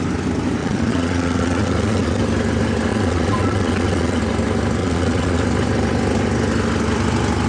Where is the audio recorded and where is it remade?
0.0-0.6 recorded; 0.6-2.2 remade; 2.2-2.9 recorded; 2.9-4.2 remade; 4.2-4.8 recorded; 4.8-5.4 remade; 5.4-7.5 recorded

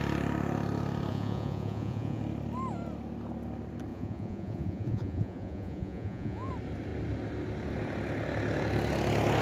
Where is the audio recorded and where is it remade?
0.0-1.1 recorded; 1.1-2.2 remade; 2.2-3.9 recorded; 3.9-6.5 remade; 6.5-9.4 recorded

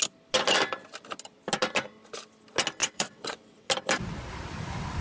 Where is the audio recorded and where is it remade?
0.0-2.8 recorded; 2.8-3.7 remade; 3.7-5.0 recorded

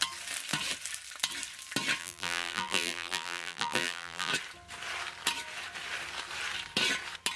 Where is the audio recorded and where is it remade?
0.0-2.0 recorded; 2.0-4.3 remade; 4.3-7.4 recorded

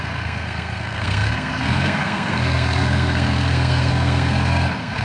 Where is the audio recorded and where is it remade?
0.0-5.0 remade